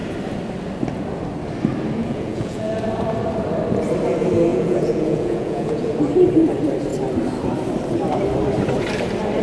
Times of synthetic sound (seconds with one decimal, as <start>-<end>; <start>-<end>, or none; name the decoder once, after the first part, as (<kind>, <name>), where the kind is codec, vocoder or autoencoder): 2.0-2.8 (vocoder, Vocos); 4.5-5.9